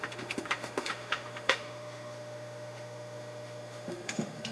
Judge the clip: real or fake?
fake